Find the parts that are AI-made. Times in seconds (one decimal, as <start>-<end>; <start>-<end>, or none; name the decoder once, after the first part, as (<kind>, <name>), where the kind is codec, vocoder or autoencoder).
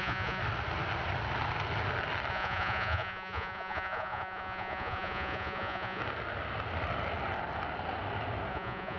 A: 0.0-0.4 (vocoder, Vocos); 2.3-6.0; 8.5-9.0